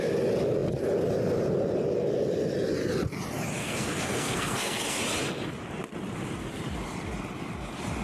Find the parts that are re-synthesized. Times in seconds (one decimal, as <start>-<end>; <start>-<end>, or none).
3.6-5.0

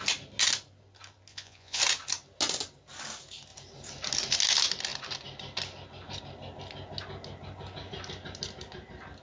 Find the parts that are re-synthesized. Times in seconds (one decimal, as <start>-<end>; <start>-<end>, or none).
1.3-1.8

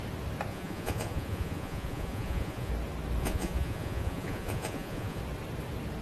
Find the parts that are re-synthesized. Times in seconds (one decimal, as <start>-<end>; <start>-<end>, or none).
0.5-2.7; 3.2-5.2

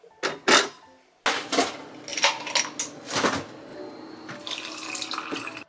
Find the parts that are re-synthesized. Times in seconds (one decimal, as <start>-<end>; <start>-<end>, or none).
none

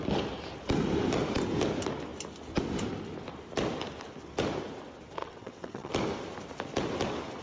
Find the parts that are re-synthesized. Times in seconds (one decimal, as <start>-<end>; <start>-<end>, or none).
5.2-5.9